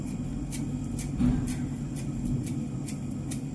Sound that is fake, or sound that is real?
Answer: real